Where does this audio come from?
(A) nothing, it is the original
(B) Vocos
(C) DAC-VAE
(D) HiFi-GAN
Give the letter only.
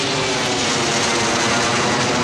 A